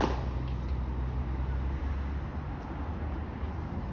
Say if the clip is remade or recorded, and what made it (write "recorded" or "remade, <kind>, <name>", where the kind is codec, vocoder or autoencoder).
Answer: recorded